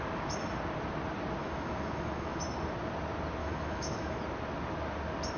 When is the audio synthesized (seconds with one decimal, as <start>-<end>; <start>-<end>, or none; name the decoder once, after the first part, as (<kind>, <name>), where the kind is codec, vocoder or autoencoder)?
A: 1.4-2.4 (autoencoder, DAC-VAE); 3.4-4.2